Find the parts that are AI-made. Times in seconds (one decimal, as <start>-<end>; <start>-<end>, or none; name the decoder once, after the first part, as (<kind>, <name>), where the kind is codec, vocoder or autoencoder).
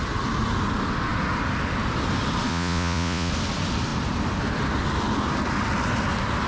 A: 2.5-3.3 (vocoder, Vocos)